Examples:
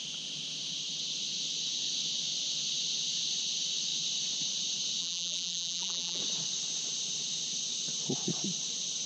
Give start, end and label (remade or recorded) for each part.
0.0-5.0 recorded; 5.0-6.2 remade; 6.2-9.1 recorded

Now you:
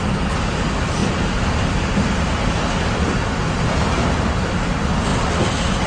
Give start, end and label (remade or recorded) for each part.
0.0-5.1 recorded; 5.1-5.9 remade